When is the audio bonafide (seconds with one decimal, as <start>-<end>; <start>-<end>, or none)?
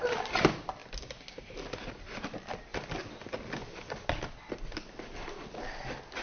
0.0-6.2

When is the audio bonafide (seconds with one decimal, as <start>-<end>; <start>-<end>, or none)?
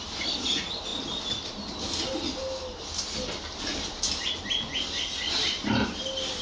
0.0-6.4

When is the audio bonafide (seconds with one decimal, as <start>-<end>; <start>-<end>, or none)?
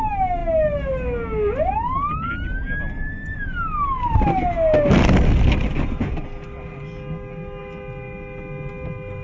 0.0-9.2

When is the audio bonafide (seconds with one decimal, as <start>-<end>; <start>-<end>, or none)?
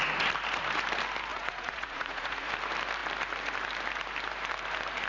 0.0-1.3; 2.5-5.1